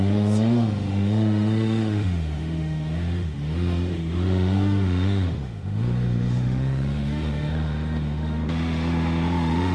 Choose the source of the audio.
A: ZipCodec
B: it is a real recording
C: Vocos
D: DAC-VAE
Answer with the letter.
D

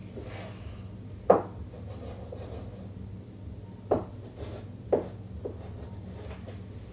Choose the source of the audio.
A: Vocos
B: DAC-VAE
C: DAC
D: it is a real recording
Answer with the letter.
D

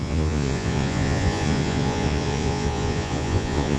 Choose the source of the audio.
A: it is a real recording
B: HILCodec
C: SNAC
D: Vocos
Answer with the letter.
D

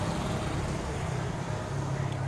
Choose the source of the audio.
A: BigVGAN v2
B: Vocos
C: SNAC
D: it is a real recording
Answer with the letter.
D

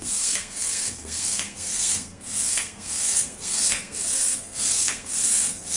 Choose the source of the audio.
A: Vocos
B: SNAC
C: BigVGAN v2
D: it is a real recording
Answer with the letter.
B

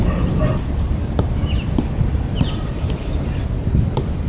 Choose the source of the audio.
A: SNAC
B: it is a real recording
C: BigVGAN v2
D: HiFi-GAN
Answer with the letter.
C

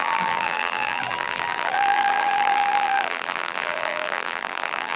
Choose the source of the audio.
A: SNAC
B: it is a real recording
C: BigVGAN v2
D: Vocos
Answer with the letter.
C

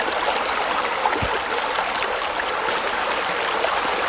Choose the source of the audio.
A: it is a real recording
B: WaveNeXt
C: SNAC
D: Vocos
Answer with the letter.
A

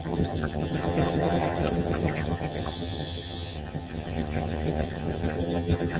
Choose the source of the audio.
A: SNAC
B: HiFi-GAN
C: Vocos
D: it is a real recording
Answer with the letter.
B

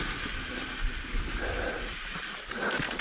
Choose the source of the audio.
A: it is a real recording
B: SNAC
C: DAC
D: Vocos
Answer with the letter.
A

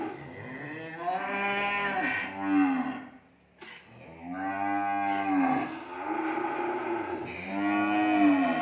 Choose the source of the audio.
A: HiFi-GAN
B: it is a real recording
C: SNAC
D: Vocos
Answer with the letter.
B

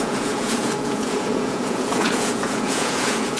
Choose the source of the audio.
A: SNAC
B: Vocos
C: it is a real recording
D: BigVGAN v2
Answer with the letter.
B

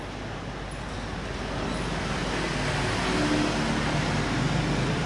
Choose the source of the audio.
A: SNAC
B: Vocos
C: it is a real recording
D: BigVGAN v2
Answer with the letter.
C